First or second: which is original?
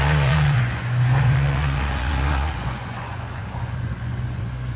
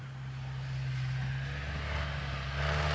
second